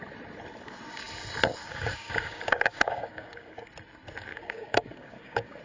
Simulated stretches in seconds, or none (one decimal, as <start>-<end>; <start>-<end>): 1.6-3.7; 4.3-5.6